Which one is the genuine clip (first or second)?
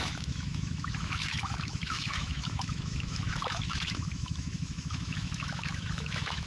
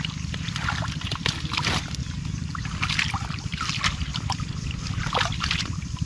second